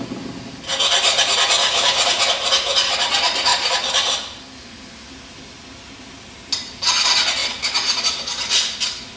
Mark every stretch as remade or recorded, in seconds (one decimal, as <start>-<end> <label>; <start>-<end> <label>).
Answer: 0.0-1.6 recorded; 1.6-2.2 remade; 2.2-9.2 recorded